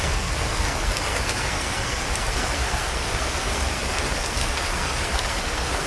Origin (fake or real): fake